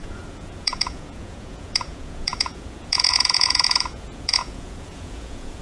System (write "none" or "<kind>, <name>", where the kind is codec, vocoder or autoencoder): vocoder, Vocos